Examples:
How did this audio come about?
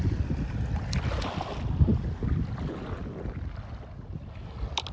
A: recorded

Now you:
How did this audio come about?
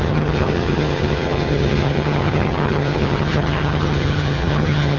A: remade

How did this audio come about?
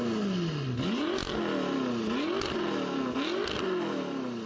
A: recorded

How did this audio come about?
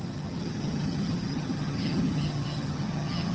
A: remade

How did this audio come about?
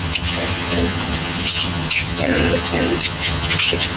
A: remade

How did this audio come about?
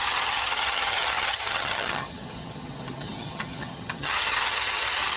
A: remade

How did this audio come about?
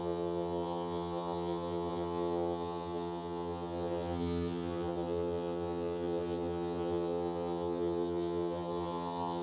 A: remade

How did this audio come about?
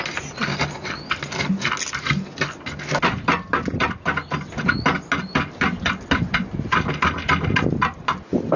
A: recorded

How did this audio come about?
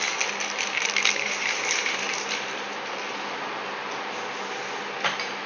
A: recorded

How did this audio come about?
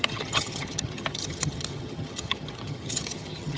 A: remade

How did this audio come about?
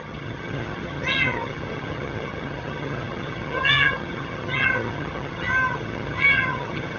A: remade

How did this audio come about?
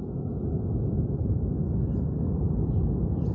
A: recorded